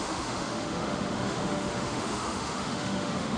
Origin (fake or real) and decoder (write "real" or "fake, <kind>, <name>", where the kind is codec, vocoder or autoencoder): fake, autoencoder, DAC-VAE